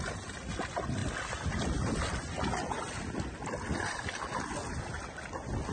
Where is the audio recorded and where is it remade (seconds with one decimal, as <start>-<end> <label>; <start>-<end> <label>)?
0.0-5.7 recorded